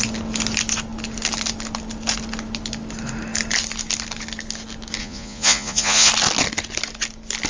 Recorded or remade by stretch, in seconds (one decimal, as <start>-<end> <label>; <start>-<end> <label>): 0.0-5.0 recorded; 5.0-6.1 remade; 6.1-7.5 recorded